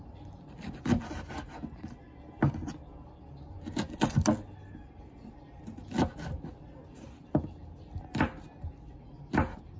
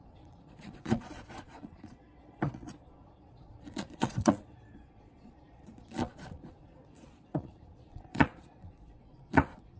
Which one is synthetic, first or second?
second